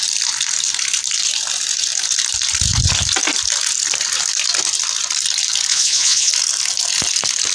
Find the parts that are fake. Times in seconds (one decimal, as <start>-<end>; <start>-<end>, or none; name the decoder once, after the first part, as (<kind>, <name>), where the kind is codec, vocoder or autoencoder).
5.7-6.3 (vocoder, Vocos)